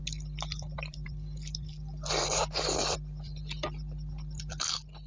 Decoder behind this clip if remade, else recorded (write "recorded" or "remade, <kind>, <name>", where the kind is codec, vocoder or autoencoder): recorded